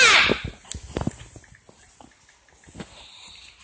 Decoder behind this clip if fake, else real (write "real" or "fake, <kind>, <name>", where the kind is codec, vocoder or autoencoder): real